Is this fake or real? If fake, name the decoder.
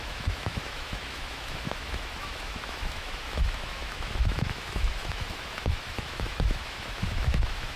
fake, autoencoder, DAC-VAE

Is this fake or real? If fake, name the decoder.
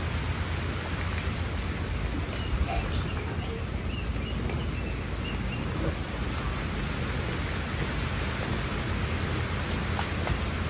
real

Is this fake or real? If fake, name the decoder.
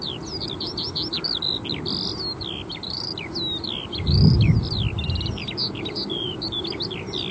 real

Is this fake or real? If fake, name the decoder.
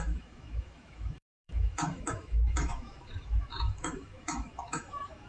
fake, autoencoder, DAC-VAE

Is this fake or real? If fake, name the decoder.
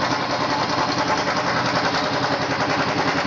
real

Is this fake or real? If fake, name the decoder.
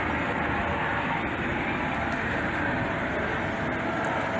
real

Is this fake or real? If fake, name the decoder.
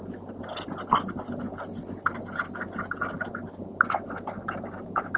real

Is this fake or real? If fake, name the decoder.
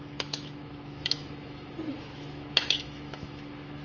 fake, autoencoder, DAC-VAE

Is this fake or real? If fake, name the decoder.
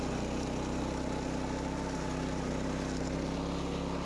real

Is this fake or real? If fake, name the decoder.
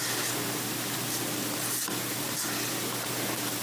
real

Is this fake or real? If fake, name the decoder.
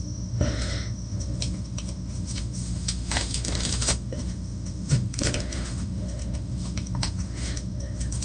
fake, autoencoder, DAC-VAE